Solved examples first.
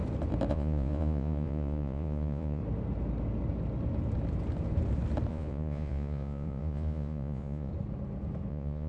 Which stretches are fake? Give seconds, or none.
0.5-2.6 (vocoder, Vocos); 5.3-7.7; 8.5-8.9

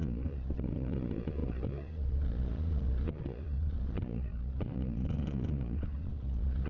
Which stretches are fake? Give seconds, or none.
0.0-6.7 (vocoder, Vocos)

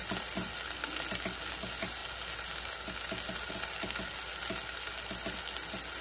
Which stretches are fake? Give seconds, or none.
none

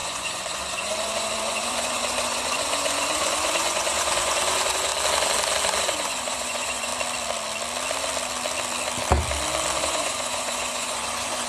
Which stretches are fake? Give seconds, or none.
0.0-4.9 (vocoder, Vocos); 5.8-6.9; 9.8-11.5

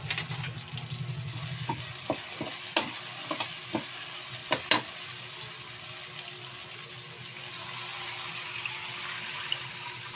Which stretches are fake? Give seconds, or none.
none

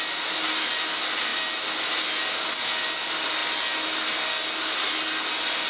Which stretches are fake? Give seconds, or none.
none

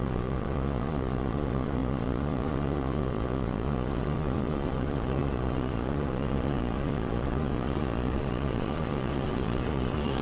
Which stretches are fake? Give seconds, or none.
0.0-10.2 (vocoder, Vocos)

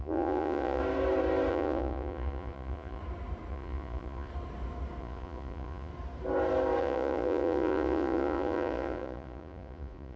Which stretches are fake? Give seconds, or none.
0.0-0.8 (vocoder, Vocos); 1.5-3.0; 3.5-4.3; 5.0-5.9; 6.8-10.2